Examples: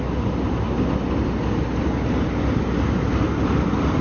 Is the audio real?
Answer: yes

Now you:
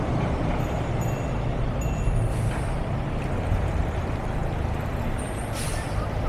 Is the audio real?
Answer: no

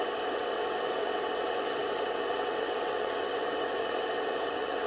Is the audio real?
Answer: no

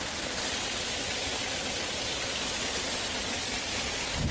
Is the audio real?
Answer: yes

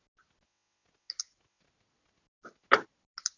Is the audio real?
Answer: yes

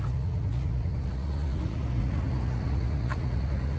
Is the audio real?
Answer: no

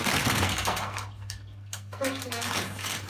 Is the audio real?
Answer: no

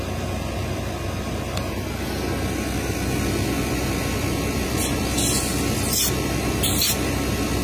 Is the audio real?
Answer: yes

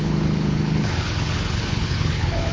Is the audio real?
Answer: no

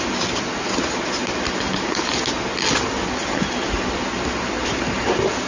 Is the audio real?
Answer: yes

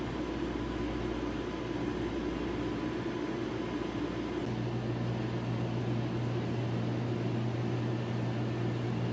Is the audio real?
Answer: yes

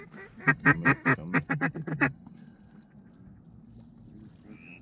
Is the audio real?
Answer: yes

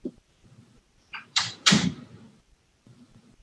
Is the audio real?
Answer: no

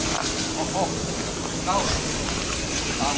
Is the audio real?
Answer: yes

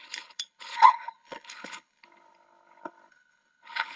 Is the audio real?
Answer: no